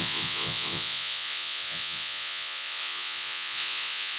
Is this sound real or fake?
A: fake